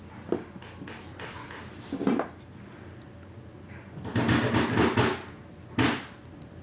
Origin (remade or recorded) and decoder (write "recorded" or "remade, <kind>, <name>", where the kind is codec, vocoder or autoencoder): recorded